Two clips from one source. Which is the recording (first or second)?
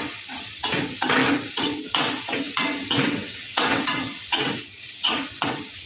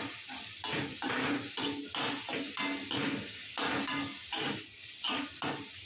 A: second